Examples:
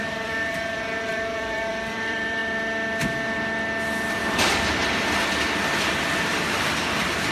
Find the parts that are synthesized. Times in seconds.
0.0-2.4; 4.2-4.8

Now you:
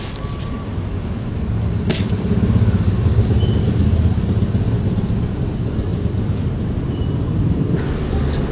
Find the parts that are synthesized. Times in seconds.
5.9-6.4

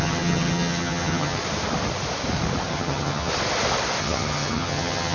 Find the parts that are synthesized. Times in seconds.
0.0-1.4; 2.7-3.3; 4.0-5.1

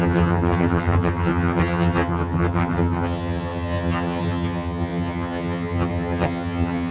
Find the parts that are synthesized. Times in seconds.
0.0-6.9

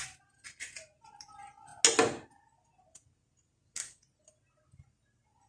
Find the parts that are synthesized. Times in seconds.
none